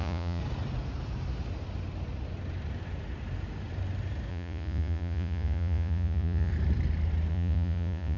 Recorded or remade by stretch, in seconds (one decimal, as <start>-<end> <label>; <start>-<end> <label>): 0.0-0.4 remade; 0.4-4.3 recorded; 4.3-6.5 remade; 6.5-7.3 recorded; 7.3-8.2 remade